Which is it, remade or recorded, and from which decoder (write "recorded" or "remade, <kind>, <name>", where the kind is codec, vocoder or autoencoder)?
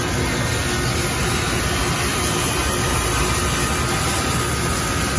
recorded